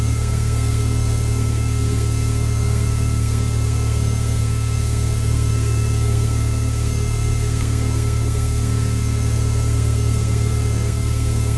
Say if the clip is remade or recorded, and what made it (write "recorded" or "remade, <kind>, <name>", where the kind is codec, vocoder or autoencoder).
remade, codec, SNAC